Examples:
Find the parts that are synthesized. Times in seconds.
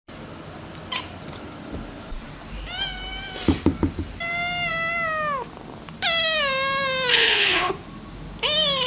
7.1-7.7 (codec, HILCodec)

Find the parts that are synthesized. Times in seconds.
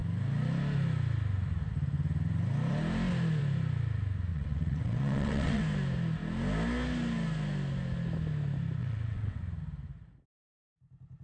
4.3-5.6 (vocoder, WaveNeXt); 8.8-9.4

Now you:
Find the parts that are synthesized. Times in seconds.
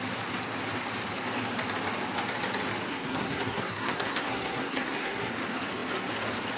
2.9-5.3 (codec, SNAC)